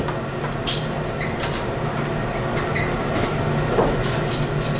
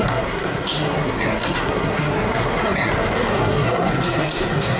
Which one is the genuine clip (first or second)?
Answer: first